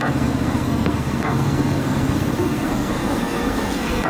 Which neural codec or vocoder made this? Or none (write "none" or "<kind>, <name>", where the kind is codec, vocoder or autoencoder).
codec, SNAC